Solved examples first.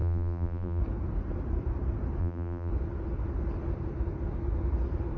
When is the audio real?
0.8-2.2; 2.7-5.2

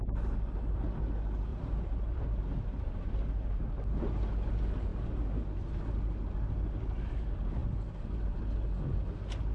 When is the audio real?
0.0-1.5; 3.1-9.5

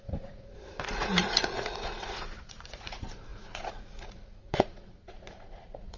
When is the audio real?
none

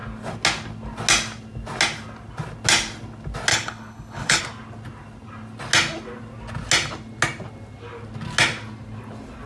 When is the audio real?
0.0-3.5; 4.4-9.5

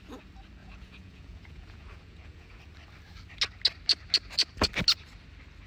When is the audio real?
0.0-0.6; 2.6-5.7

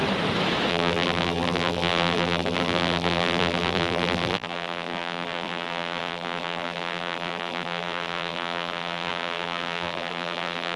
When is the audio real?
0.0-0.7

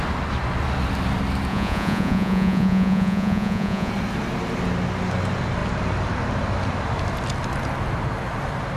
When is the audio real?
0.0-1.5; 3.9-8.8